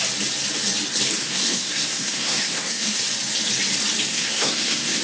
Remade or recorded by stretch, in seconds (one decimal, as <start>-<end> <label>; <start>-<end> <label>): 0.0-1.2 recorded; 1.2-3.0 remade; 3.0-4.1 recorded; 4.1-5.0 remade